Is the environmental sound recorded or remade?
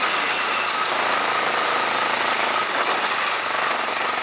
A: recorded